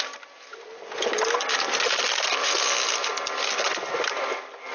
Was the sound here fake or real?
real